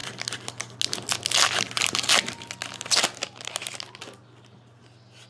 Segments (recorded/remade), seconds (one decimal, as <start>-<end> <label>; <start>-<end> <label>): 0.0-5.3 recorded